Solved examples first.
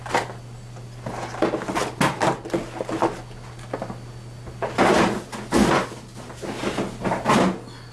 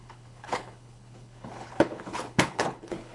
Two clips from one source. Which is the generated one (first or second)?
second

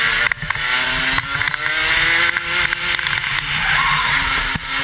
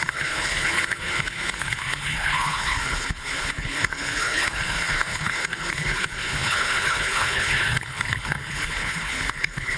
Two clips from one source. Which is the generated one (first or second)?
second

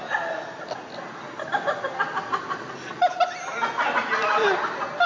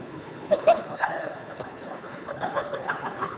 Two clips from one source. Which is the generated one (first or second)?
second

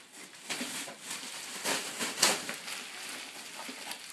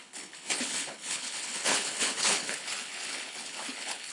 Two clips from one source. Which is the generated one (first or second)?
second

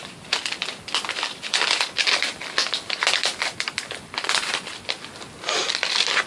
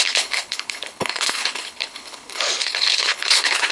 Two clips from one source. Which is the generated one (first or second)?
second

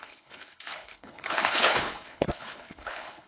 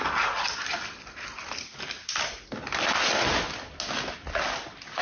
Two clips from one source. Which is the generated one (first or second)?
first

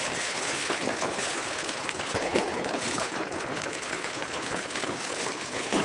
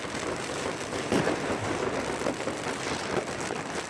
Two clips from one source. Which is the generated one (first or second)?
first